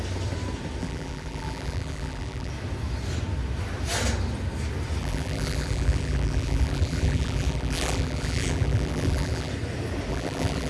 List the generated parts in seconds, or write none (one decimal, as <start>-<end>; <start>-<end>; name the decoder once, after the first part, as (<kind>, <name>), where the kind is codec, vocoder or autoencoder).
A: 0.8-2.5 (vocoder, BigVGAN v2); 5.0-9.5; 10.1-10.7

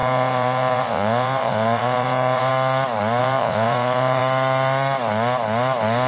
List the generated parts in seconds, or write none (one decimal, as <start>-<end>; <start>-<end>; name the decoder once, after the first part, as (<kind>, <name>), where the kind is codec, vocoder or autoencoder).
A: 0.0-2.5 (vocoder, Vocos); 3.2-4.2

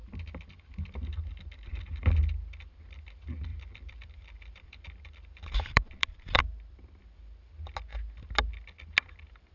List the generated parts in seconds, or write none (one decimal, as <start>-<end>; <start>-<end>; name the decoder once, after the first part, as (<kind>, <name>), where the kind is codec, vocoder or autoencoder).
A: 3.5-7.0 (vocoder, BigVGAN v2)

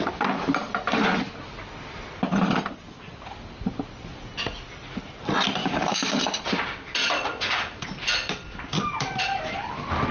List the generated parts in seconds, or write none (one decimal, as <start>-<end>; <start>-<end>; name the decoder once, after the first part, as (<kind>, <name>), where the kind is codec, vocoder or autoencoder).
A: 5.6-6.2 (codec, DAC)

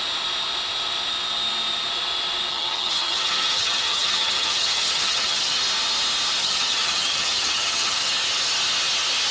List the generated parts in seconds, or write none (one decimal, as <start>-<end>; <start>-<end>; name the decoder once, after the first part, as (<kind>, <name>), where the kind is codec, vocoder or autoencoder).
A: 2.5-5.6 (vocoder, HiFi-GAN); 6.4-8.1

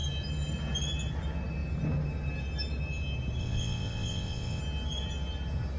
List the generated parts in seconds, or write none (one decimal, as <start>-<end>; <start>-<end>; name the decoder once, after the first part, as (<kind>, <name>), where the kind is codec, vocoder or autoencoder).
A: 3.4-4.6 (vocoder, WaveNeXt)

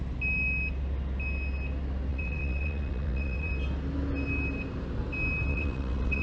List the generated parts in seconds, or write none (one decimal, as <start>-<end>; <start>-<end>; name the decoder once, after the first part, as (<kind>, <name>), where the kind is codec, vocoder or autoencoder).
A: 2.1-3.5 (vocoder, WaveNeXt); 5.5-6.2